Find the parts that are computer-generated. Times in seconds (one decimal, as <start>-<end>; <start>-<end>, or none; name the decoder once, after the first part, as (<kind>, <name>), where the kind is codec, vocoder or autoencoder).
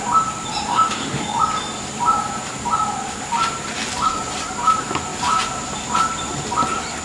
0.7-1.2 (autoencoder, DAC-VAE)